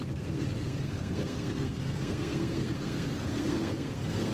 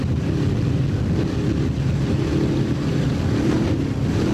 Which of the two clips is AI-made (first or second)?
first